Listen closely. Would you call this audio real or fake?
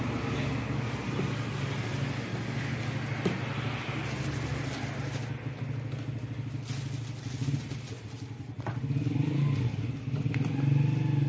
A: real